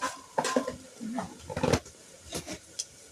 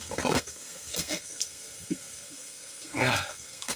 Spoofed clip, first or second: second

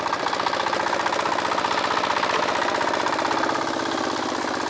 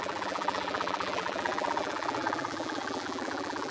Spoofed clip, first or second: second